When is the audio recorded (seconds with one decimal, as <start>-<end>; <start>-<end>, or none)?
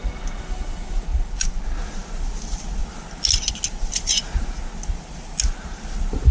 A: 0.0-6.3